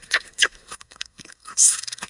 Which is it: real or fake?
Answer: fake